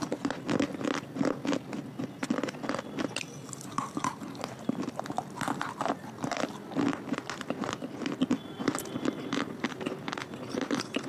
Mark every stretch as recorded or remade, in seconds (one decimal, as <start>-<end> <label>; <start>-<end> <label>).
0.0-11.1 recorded